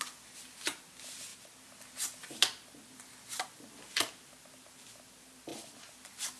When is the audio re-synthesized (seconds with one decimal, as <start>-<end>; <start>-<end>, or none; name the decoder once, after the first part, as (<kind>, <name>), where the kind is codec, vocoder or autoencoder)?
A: 5.5-6.4 (vocoder, BigVGAN v2)